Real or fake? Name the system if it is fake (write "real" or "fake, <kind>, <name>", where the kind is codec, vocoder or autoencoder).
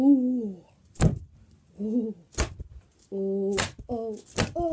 real